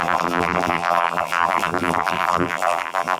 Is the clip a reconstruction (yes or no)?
yes